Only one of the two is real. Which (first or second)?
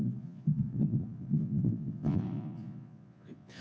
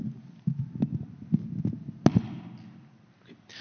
second